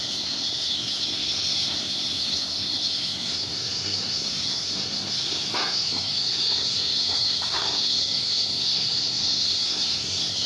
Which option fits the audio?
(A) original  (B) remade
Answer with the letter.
B